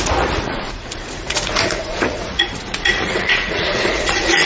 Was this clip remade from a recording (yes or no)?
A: yes